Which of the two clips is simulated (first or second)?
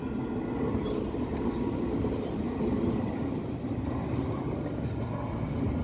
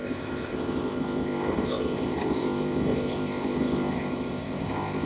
second